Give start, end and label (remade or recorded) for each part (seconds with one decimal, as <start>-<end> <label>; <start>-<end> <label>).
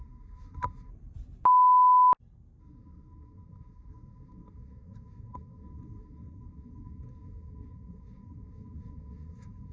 0.0-0.9 remade; 0.9-2.6 recorded; 2.6-9.7 remade